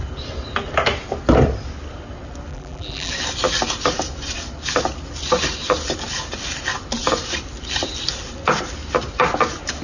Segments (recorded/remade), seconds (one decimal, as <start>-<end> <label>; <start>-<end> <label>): 0.0-2.5 recorded; 2.5-3.1 remade; 3.1-9.8 recorded